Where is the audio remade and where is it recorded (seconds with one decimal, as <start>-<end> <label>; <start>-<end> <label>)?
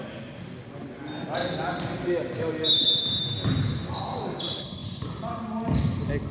0.0-6.3 recorded